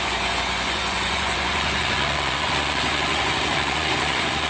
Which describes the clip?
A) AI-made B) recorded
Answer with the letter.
A